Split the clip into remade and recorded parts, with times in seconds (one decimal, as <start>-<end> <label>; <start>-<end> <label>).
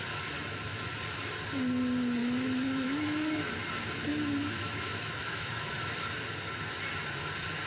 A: 0.0-2.2 recorded; 2.2-3.5 remade; 3.5-4.1 recorded; 4.1-5.7 remade; 5.7-7.7 recorded